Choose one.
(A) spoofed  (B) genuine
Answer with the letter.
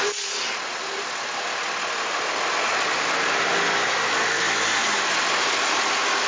B